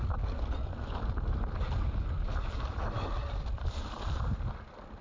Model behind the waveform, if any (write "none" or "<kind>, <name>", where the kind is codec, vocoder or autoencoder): none